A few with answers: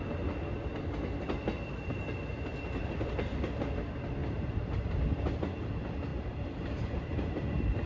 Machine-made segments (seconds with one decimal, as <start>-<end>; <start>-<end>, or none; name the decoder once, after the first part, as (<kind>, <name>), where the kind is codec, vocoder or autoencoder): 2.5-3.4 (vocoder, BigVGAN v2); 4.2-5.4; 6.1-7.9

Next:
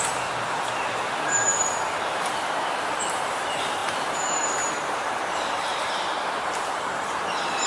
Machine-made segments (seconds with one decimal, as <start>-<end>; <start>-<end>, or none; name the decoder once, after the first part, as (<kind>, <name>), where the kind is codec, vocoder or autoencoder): 0.0-1.5 (vocoder, BigVGAN v2); 2.1-7.7

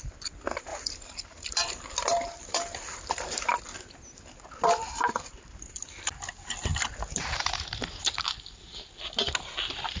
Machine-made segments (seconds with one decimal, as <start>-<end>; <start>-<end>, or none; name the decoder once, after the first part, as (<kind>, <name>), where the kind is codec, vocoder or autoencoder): 0.7-3.5 (vocoder, BigVGAN v2)

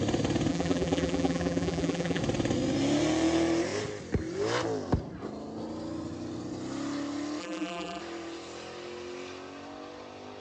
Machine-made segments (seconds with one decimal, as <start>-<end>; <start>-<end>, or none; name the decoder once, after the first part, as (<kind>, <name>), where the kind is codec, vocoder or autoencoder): 0.5-2.2 (vocoder, BigVGAN v2); 7.4-8.0

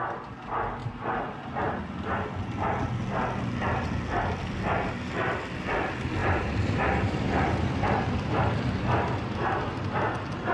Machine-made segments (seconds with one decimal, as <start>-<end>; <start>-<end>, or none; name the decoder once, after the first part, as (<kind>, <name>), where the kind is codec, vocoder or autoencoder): 6.2-7.7 (vocoder, BigVGAN v2)

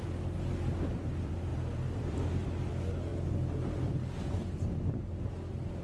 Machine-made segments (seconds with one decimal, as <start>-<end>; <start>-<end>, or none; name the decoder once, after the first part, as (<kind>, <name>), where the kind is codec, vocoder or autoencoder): 1.5-2.7 (vocoder, BigVGAN v2)

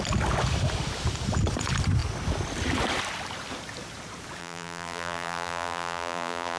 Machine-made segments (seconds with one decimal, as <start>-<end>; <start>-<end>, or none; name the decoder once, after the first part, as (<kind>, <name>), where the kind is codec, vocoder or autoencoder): 4.4-6.6 (vocoder, BigVGAN v2)